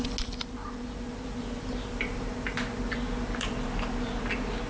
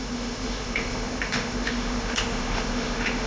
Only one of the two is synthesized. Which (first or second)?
second